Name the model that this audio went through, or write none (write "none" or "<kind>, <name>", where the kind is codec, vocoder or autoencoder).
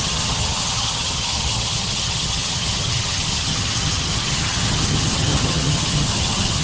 vocoder, HiFi-GAN